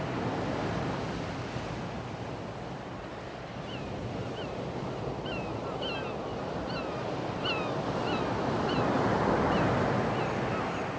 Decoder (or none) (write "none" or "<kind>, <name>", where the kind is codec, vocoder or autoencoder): none